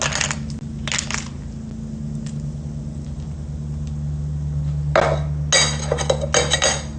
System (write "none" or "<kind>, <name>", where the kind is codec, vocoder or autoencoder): none